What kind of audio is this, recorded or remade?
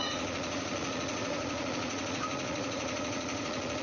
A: remade